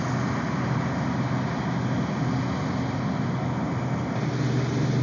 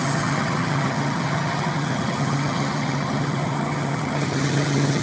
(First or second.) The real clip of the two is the first